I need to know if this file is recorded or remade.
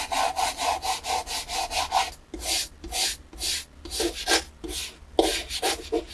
recorded